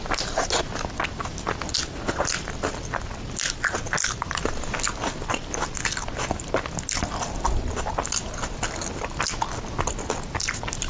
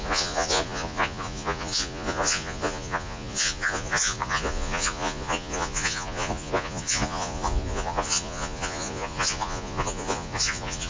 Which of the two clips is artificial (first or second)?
second